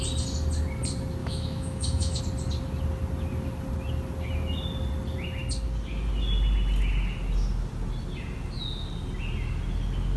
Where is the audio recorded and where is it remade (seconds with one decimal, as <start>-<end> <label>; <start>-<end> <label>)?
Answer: 0.0-1.2 recorded; 1.2-2.2 remade; 2.2-10.2 recorded